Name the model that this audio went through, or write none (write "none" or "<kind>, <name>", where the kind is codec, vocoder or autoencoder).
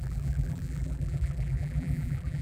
vocoder, BigVGAN v2